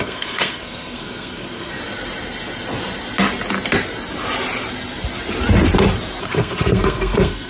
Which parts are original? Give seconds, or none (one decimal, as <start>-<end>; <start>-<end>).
1.7-6.2

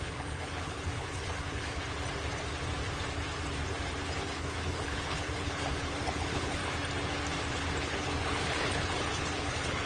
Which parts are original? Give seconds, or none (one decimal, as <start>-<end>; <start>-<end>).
1.8-4.2; 6.6-7.8